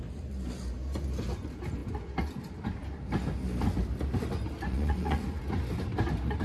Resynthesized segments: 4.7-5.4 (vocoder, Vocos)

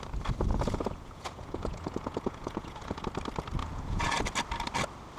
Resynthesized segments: 0.5-3.0 (vocoder, Vocos); 3.6-4.2